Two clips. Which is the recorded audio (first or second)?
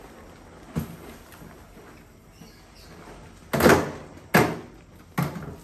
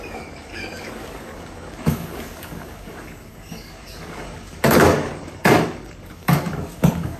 first